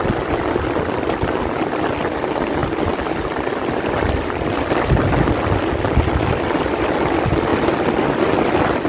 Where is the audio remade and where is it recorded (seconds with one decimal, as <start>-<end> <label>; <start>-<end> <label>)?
0.0-8.9 recorded